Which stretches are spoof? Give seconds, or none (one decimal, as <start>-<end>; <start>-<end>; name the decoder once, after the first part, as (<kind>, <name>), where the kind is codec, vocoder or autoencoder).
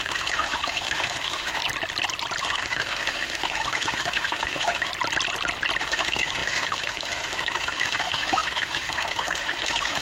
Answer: 0.0-1.6 (autoencoder, DAC-VAE); 2.4-4.9; 5.8-10.0